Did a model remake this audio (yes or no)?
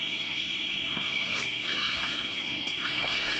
yes